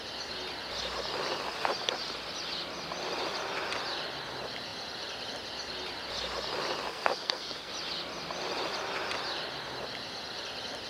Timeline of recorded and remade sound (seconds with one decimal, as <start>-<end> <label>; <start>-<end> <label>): 0.0-6.9 recorded; 6.9-7.7 remade; 7.7-10.9 recorded